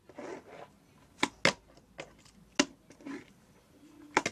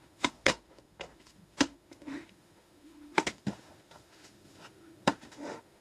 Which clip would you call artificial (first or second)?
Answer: second